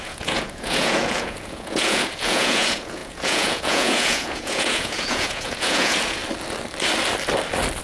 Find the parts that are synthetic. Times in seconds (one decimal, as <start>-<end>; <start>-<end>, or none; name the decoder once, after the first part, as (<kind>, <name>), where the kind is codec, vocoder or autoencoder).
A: 0.0-6.2 (vocoder, Vocos)